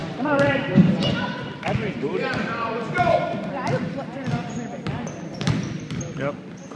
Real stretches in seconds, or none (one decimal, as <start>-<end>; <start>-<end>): 1.5-6.8